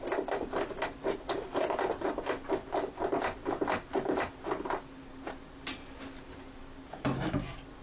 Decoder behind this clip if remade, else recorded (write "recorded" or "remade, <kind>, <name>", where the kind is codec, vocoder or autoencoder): recorded